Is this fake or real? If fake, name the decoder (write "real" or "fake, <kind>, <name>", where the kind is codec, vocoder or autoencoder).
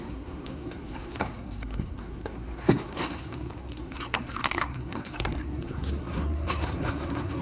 fake, codec, SNAC